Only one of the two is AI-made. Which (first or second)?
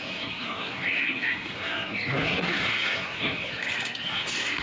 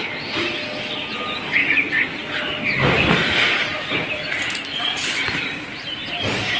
first